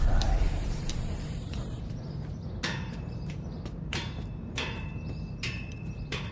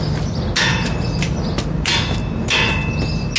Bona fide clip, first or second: second